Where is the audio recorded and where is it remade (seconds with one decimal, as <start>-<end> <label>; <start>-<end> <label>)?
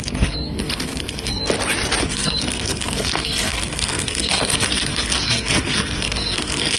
0.0-1.4 remade; 1.4-2.0 recorded; 2.0-6.8 remade